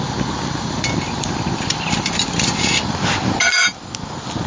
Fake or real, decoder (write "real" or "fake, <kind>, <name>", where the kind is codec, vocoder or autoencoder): real